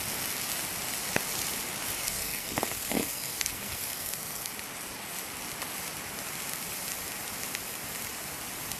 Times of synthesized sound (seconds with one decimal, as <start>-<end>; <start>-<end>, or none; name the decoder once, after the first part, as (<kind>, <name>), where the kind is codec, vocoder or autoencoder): 2.0-4.5 (codec, SNAC)